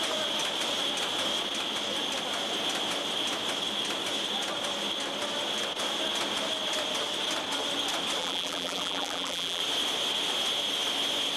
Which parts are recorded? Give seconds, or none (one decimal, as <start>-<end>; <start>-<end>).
0.0-8.2; 9.6-11.4